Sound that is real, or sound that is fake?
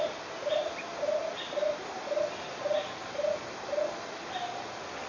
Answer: real